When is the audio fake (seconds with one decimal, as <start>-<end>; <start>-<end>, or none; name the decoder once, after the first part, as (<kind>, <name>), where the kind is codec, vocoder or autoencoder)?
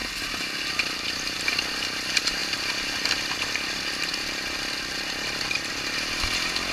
0.7-6.7 (vocoder, BigVGAN v2)